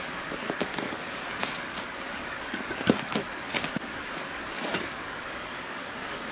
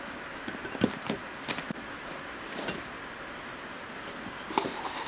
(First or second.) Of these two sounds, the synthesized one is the first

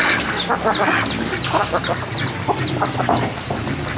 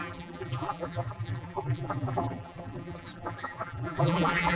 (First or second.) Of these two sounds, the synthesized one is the second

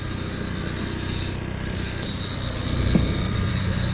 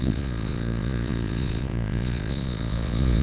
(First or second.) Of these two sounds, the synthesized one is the second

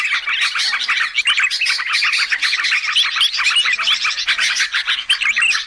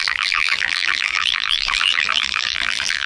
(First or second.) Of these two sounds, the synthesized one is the second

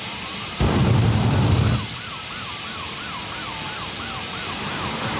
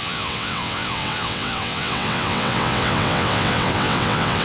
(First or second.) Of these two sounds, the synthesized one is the second